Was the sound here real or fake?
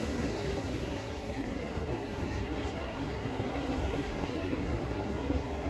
fake